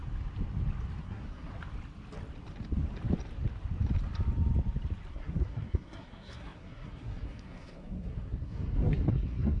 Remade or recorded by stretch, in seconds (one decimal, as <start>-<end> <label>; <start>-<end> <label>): 0.0-1.0 recorded; 1.0-1.5 remade; 1.5-5.1 recorded; 5.1-9.6 remade